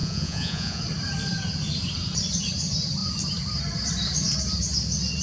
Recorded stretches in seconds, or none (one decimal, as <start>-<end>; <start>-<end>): 0.8-5.2